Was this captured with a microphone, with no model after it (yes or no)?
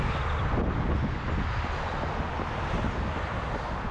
yes